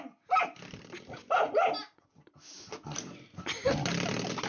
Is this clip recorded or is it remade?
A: recorded